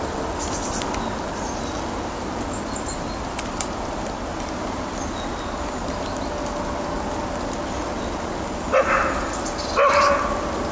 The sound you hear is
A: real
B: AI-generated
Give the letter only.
A